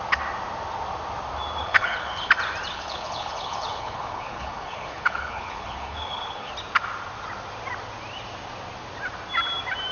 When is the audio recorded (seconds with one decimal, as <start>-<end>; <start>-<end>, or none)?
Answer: 0.0-1.6; 2.3-2.7; 6.5-9.9